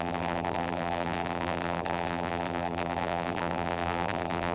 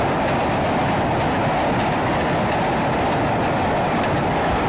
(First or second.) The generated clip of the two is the first